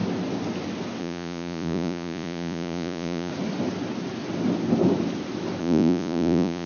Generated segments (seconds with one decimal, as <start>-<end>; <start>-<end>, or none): 1.0-3.3; 5.6-6.7

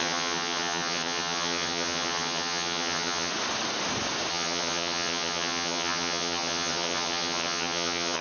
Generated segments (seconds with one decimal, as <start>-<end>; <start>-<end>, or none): 0.0-3.3; 4.3-8.2

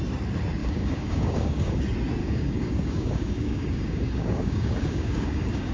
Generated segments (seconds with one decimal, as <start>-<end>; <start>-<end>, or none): 0.6-1.8; 2.2-5.7

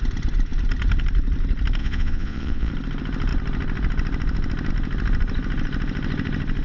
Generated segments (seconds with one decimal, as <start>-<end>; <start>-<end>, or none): 1.8-2.7

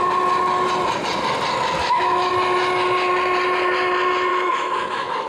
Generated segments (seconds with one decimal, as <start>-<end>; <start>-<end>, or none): 1.8-2.3; 4.3-5.3

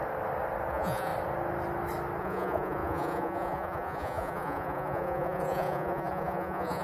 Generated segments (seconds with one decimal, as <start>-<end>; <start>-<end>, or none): 0.7-1.1; 2.2-6.8

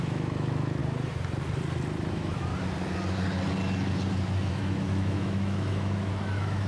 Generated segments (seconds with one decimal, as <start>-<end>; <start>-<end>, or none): 0.0-0.8; 2.1-2.5; 4.5-6.7

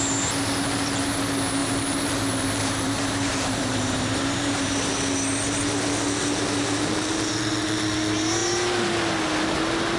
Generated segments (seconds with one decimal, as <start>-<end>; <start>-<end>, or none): 1.6-4.9